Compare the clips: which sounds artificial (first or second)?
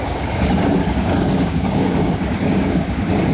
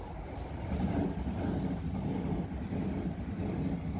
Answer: first